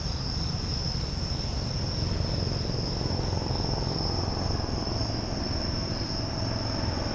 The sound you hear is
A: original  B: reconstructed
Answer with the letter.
A